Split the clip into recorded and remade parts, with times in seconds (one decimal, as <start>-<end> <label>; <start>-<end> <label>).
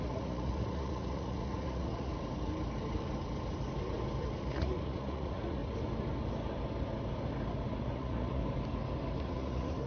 0.0-2.1 remade; 2.1-4.4 recorded; 4.4-5.6 remade; 5.6-7.8 recorded; 7.8-8.4 remade; 8.4-9.2 recorded; 9.2-9.9 remade